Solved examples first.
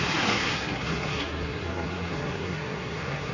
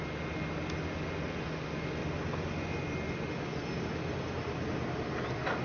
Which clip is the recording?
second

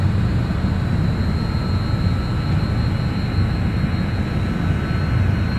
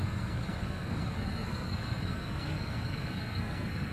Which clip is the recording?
first